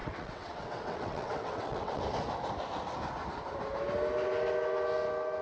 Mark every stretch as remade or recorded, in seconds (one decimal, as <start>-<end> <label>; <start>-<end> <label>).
0.0-2.0 remade; 2.0-5.4 recorded